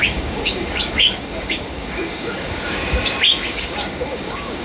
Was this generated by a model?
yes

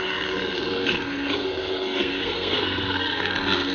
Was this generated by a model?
yes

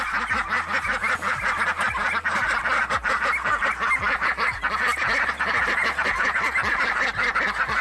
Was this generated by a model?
no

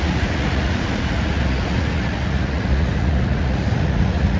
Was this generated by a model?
yes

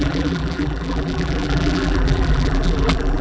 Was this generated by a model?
yes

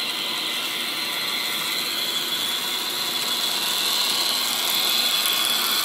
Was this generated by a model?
no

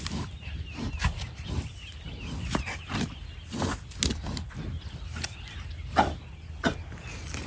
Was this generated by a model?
no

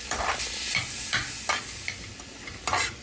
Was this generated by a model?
no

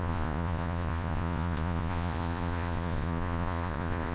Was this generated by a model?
yes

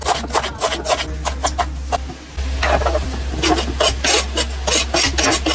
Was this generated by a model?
no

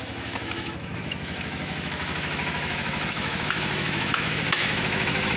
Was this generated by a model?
yes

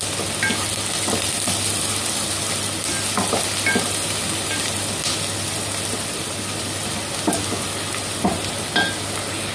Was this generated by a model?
no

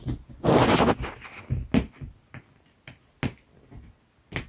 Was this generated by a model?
no